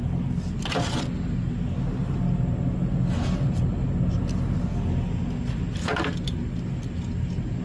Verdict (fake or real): real